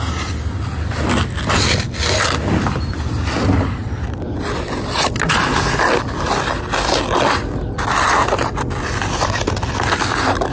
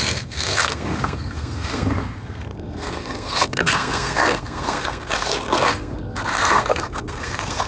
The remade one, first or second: second